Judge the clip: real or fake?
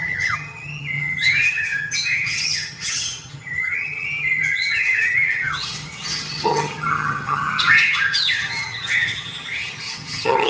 fake